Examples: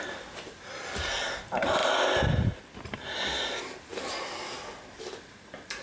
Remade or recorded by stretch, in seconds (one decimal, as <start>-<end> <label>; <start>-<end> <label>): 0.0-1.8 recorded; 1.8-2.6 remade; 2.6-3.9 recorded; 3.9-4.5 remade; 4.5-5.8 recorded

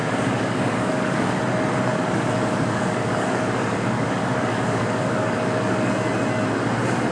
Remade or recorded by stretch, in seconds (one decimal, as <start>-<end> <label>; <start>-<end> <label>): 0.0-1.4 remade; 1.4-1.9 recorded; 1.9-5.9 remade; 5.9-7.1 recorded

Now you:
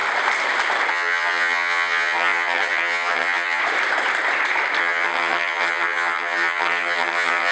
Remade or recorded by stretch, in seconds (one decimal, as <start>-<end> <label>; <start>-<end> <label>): 0.0-0.9 recorded; 0.9-3.6 remade; 3.6-4.8 recorded; 4.8-7.5 remade